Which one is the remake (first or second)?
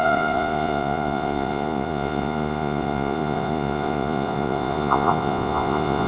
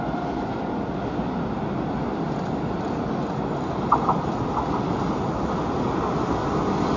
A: first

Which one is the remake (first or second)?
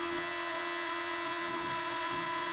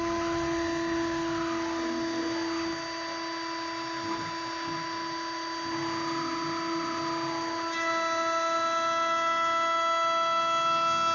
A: first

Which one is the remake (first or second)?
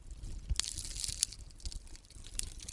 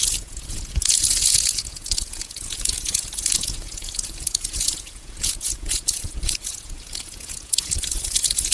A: second